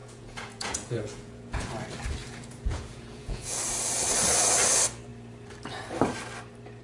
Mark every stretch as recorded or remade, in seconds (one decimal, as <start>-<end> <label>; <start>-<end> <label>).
0.0-1.7 remade; 1.7-2.2 recorded; 2.2-3.6 remade; 3.6-6.8 recorded